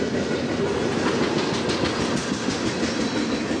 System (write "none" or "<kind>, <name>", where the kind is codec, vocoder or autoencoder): none